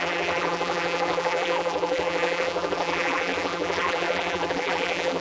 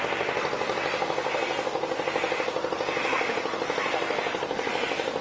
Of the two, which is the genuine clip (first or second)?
second